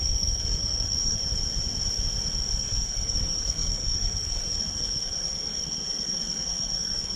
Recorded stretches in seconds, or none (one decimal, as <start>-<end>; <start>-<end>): 1.2-2.5